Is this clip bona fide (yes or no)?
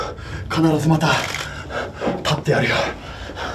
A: yes